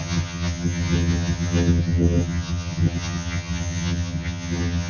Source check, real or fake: fake